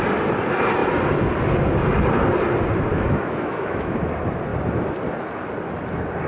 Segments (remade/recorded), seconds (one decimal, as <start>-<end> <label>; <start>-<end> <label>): 0.0-2.9 recorded; 2.9-4.0 remade; 4.0-6.3 recorded